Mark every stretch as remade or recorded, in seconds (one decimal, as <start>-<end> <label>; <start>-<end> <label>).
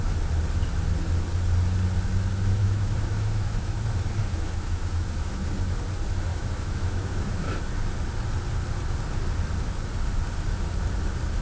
0.0-2.6 recorded; 2.6-3.8 remade; 3.8-4.2 recorded; 4.2-5.5 remade; 5.5-6.3 recorded; 6.3-7.6 remade; 7.6-11.4 recorded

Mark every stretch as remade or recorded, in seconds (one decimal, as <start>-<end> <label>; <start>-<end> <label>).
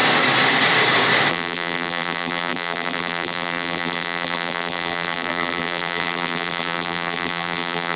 0.0-1.3 recorded; 1.3-8.0 remade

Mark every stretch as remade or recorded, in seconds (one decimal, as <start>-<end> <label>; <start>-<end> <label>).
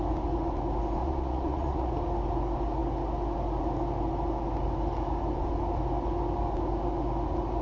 0.0-1.0 recorded; 1.0-1.9 remade; 1.9-7.6 recorded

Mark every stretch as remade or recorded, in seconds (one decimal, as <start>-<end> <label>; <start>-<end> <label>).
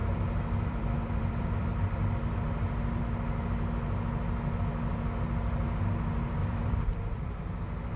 0.0-3.0 remade; 3.0-6.4 recorded; 6.4-7.4 remade; 7.4-8.0 recorded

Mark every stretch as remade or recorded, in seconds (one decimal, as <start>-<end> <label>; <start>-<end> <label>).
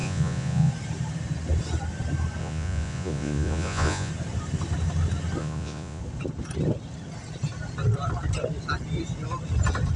0.0-0.7 remade; 0.7-2.4 recorded; 2.4-4.1 remade; 4.1-5.4 recorded; 5.4-6.0 remade; 6.0-10.0 recorded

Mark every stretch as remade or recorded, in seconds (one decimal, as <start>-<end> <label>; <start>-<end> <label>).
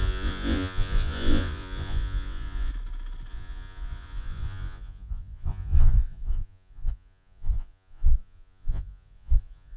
0.0-2.7 remade; 2.7-3.3 recorded; 3.3-9.8 remade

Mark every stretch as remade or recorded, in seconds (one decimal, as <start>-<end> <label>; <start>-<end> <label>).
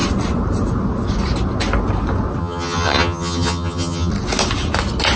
0.0-2.4 recorded; 2.4-4.1 remade; 4.1-5.2 recorded